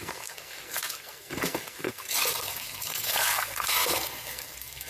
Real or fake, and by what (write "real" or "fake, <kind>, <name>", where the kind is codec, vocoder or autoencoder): fake, codec, SNAC